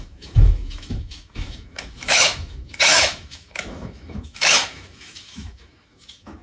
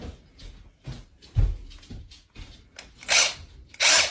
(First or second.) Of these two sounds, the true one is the second